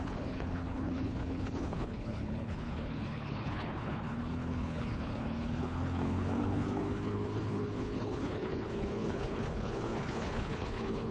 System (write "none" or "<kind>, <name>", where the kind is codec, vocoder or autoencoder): codec, HILCodec